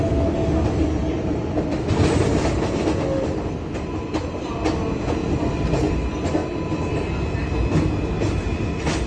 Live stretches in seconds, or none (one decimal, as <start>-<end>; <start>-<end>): 0.0-9.1